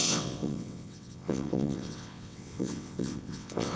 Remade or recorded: remade